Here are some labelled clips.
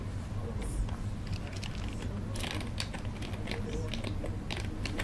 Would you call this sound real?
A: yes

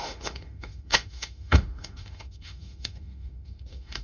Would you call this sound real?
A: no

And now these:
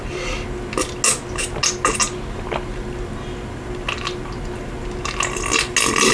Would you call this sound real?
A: yes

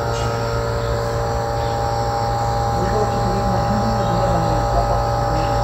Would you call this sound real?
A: yes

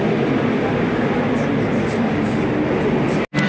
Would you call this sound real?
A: yes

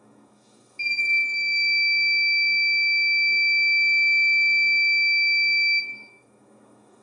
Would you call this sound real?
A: no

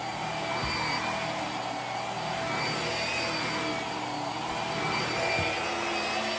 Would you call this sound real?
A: yes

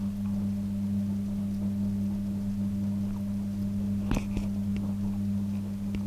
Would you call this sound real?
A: yes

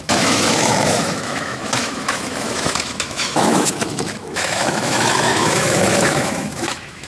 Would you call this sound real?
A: no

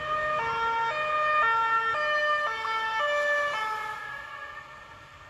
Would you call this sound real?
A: yes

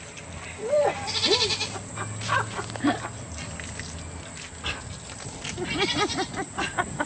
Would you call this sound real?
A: yes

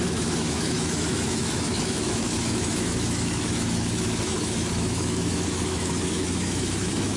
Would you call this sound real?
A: no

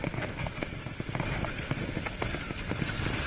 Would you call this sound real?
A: yes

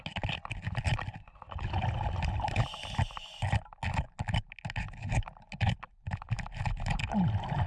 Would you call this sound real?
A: yes